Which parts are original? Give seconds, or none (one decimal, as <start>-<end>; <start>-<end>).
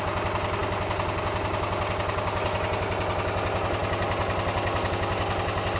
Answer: 0.0-5.8